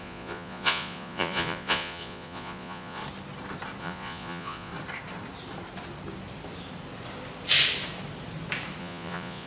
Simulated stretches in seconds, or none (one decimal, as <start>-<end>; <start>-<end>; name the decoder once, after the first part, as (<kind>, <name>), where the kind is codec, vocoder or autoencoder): 0.0-3.0 (vocoder, Vocos); 3.8-4.7; 8.8-9.5